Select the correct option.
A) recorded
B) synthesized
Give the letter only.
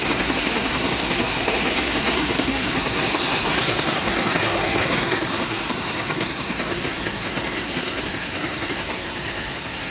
B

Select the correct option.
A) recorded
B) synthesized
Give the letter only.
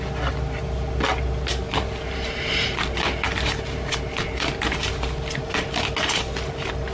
A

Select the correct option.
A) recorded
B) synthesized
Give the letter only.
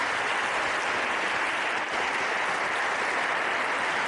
A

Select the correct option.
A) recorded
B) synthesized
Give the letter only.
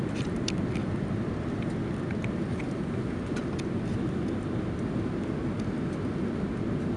A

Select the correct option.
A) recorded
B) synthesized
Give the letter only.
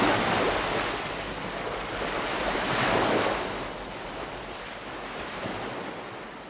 A